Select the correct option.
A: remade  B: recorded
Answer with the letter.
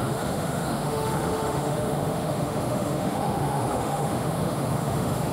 A